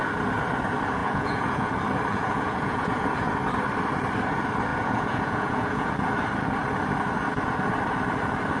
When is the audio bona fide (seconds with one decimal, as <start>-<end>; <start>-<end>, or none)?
0.0-1.0; 1.7-2.1; 3.3-4.7; 5.9-8.6